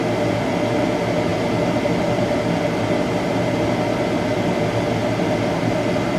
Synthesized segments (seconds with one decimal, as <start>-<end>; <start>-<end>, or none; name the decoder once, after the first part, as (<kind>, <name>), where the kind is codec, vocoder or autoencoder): none